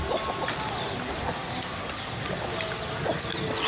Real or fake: real